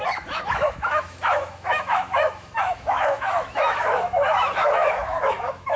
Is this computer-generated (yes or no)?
yes